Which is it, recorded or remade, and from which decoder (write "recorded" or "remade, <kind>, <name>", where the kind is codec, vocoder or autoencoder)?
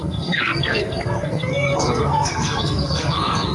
remade, codec, SNAC